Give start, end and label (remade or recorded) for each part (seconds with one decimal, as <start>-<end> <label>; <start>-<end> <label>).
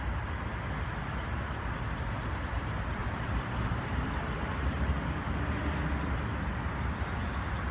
0.0-3.0 recorded; 3.0-4.9 remade; 4.9-7.7 recorded